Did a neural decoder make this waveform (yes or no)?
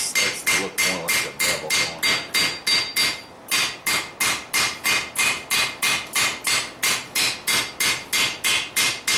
no